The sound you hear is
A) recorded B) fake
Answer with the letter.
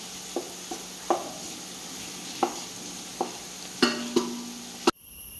A